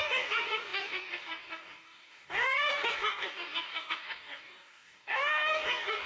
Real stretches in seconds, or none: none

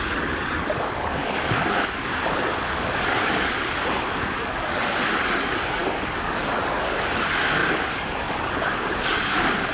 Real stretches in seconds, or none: none

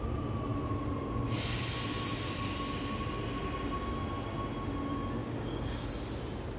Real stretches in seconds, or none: 0.0-5.2; 5.9-6.6

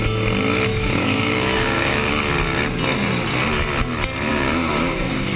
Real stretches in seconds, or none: 0.0-0.7; 2.1-4.3